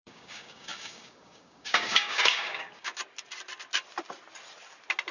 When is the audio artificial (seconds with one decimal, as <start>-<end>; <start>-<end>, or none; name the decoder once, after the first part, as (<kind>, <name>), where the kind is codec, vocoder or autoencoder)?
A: 0.0-2.9 (codec, DAC)